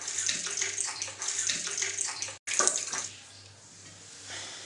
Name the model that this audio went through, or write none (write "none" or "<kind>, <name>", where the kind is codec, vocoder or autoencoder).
none